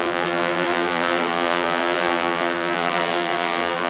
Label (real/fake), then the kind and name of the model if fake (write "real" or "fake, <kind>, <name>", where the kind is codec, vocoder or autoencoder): fake, vocoder, BigVGAN v2